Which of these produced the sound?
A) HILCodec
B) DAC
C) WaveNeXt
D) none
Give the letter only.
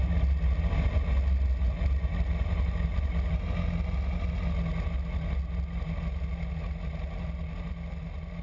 D